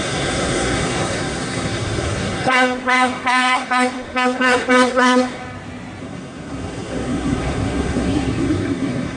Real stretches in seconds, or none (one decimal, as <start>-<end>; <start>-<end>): 5.4-6.0